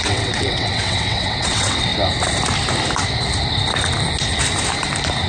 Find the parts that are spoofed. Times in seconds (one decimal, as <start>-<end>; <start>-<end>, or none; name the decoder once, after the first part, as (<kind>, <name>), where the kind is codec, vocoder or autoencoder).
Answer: 0.0-1.9 (vocoder, WaveNeXt)